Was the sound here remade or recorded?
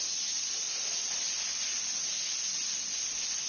recorded